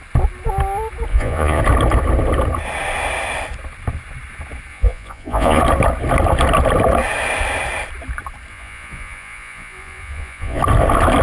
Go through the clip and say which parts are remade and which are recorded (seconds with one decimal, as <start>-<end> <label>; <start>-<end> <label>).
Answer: 0.0-1.1 recorded; 1.1-1.6 remade; 1.6-4.7 recorded; 4.7-5.6 remade; 5.6-8.5 recorded; 8.5-10.6 remade; 10.6-11.2 recorded